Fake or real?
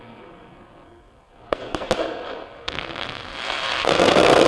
fake